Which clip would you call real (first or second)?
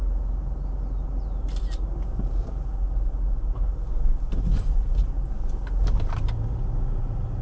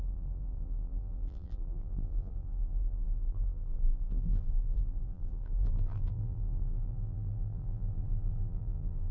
first